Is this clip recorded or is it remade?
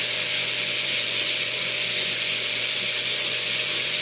remade